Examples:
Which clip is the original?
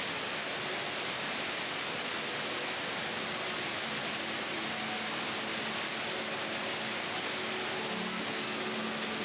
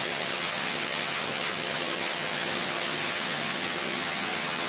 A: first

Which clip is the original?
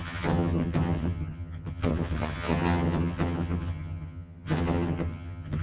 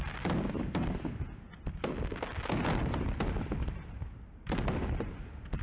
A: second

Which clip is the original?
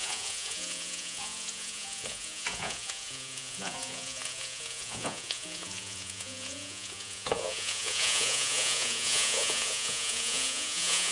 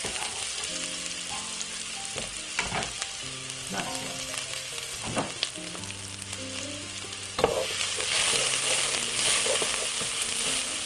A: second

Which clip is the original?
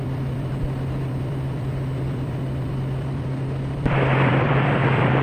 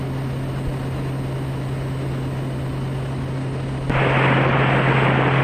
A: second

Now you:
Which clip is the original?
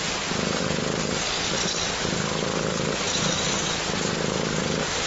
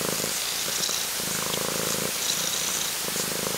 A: first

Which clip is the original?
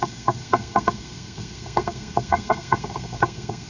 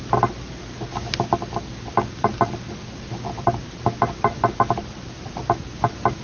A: second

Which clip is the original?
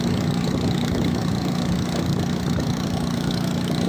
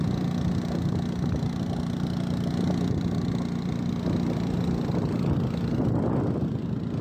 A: second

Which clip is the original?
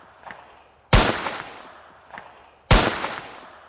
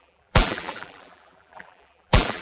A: first